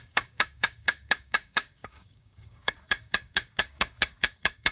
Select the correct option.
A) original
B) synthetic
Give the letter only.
B